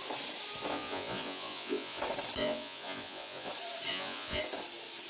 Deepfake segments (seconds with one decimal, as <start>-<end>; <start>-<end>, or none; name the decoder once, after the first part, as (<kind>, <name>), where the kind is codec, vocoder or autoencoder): 0.7-2.0 (vocoder, Vocos); 2.4-3.5; 3.9-4.4